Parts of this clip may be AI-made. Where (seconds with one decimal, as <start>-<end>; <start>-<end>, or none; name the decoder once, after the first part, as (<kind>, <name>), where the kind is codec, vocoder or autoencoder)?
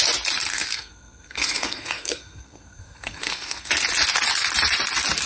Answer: 0.5-3.7 (codec, SNAC)